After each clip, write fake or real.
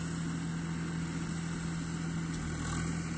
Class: real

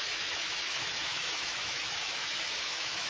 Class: fake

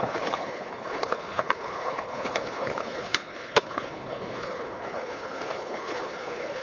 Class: fake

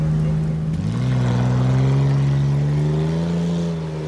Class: real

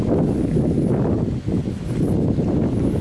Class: real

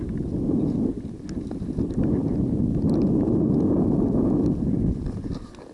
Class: real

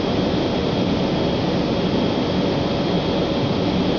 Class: real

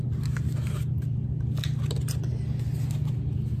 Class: real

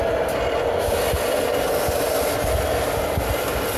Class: real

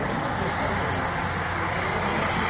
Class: real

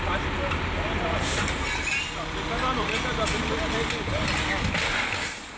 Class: real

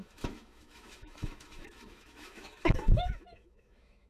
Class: fake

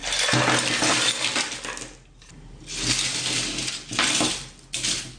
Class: real